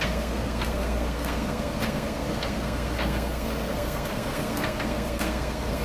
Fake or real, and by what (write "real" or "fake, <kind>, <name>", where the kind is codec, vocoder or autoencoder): fake, codec, SNAC